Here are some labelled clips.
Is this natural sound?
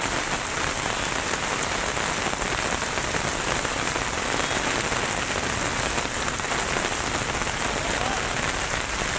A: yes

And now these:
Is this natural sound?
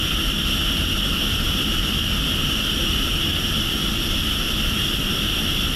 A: yes